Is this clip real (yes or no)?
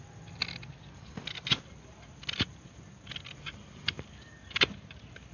yes